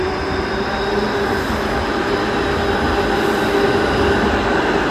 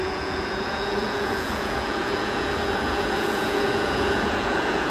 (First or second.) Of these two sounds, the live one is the first